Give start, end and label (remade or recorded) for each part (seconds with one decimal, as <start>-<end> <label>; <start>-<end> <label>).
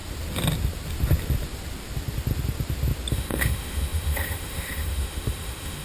0.0-3.1 recorded; 3.1-5.8 remade